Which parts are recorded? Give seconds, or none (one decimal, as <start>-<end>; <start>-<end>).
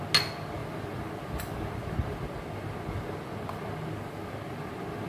0.0-5.1